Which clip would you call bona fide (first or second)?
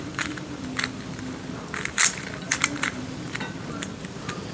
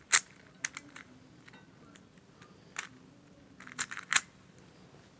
second